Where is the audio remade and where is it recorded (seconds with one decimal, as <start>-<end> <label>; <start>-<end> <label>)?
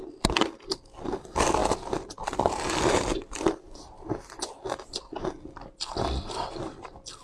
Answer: 0.0-7.2 recorded